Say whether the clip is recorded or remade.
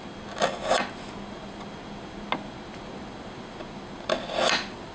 recorded